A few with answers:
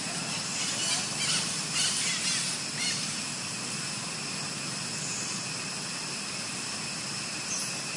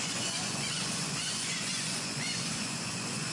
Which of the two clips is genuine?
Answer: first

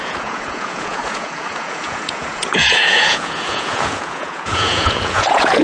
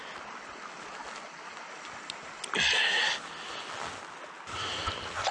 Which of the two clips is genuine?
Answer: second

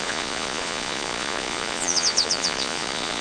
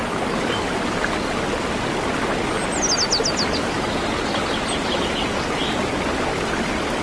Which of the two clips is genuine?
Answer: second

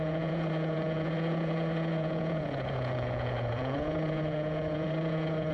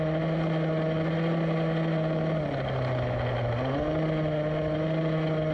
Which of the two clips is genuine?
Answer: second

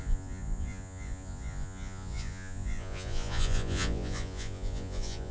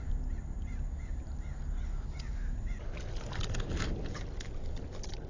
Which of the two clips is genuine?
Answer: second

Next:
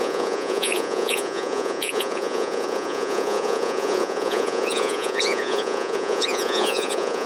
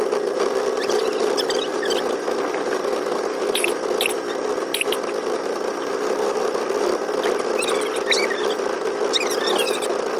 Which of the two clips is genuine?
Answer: second